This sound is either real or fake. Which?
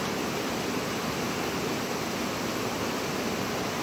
real